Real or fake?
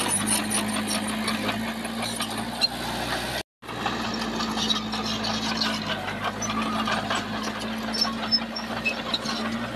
real